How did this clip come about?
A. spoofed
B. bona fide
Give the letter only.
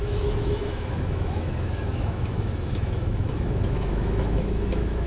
A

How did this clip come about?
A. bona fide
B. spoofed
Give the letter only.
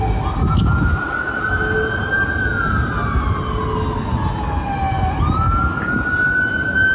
A